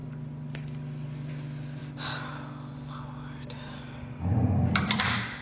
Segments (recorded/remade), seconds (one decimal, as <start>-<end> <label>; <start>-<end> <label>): 0.0-1.3 remade; 1.3-1.8 recorded; 1.8-5.0 remade; 5.0-5.4 recorded